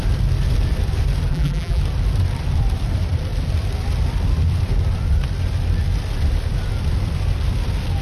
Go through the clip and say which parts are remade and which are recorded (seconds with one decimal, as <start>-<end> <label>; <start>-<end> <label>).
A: 0.0-1.3 recorded; 1.3-1.8 remade; 1.8-8.0 recorded